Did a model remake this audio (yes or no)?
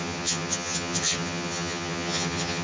yes